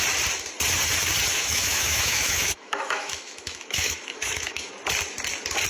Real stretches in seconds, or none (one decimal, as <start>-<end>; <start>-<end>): 0.0-1.3; 4.7-5.7